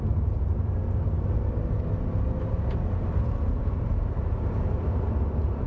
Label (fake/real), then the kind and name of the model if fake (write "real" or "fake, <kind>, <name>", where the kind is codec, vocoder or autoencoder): real